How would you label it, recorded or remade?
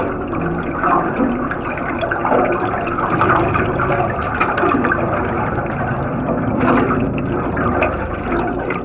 remade